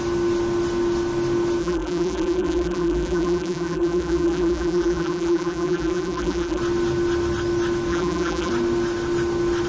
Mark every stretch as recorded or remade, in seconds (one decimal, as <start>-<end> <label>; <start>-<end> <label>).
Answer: 0.0-1.6 recorded; 1.6-6.6 remade; 6.6-7.9 recorded; 7.9-8.5 remade; 8.5-9.7 recorded